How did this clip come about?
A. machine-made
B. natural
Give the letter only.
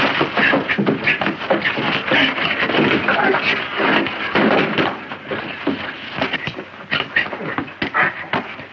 B